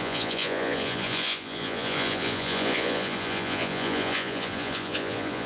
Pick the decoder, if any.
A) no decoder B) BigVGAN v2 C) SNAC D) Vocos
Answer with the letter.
D